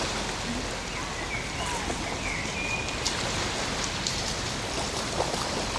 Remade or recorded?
recorded